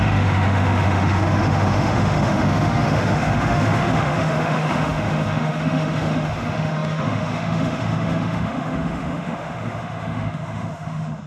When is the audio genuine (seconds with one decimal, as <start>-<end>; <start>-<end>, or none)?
none